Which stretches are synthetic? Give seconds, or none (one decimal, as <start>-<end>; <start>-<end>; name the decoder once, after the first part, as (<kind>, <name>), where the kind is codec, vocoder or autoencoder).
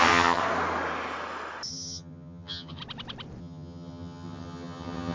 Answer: 0.0-0.4 (vocoder, HiFi-GAN); 1.7-2.8; 3.4-5.1